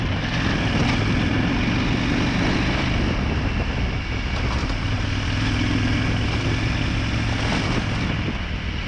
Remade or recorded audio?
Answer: recorded